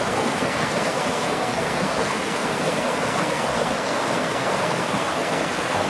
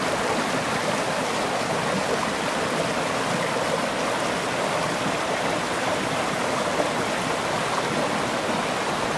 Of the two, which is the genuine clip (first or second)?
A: second